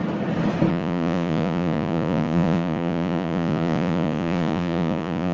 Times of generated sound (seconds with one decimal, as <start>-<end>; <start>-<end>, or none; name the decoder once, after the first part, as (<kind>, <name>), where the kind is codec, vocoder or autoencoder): 0.7-5.3 (vocoder, Vocos)